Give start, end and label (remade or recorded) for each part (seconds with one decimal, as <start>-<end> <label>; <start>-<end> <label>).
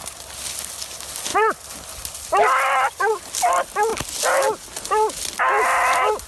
0.0-6.3 recorded